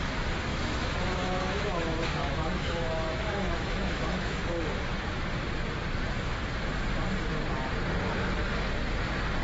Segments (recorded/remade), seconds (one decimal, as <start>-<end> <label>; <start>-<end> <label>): 0.0-0.5 recorded; 0.5-4.4 remade; 4.4-9.4 recorded